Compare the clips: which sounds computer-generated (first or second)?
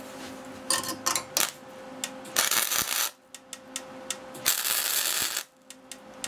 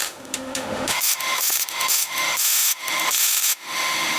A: second